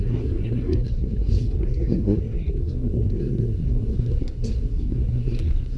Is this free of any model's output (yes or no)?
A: no